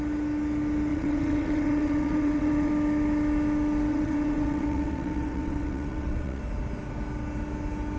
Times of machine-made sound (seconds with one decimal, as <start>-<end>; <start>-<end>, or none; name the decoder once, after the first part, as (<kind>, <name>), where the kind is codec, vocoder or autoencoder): 0.9-2.7 (vocoder, WaveNeXt); 3.9-6.4